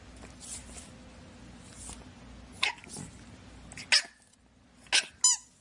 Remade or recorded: recorded